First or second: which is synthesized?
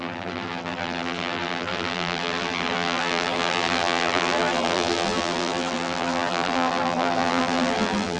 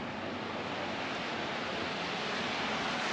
first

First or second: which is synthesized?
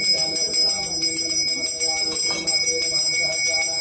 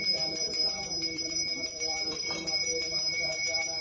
second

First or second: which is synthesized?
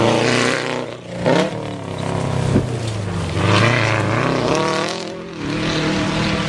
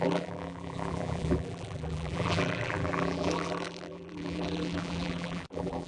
second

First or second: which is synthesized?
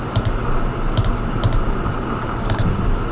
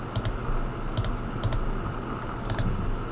first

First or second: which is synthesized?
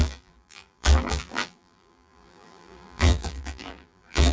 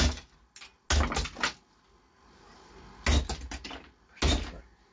first